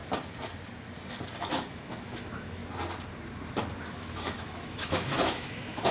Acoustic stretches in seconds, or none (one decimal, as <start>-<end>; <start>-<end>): 0.0-1.5; 2.6-3.9